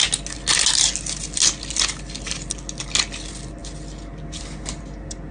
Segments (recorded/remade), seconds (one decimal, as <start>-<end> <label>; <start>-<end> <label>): 0.0-5.3 recorded